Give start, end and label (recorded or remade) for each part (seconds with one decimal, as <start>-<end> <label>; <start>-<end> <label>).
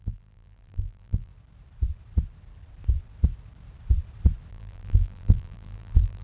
0.0-1.3 remade; 1.3-4.5 recorded; 4.5-6.2 remade